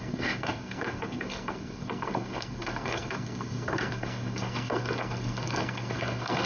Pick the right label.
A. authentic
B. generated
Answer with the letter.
B